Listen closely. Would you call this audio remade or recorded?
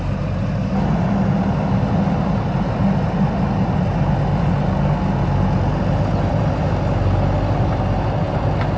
recorded